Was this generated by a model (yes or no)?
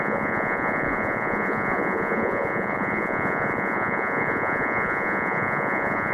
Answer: yes